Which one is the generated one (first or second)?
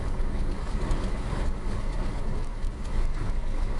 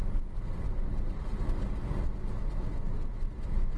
first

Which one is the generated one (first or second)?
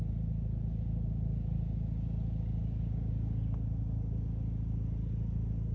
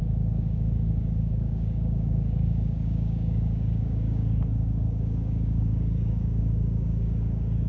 second